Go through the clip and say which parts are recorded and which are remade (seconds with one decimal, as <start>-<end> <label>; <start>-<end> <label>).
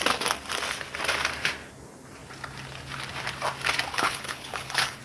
0.0-3.9 recorded; 3.9-5.0 remade